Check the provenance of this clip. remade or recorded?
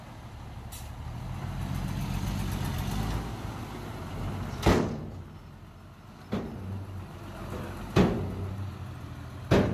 recorded